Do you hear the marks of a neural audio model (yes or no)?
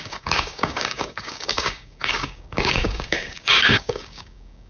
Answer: yes